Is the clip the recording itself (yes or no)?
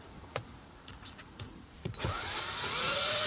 no